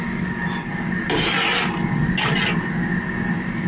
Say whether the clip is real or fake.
real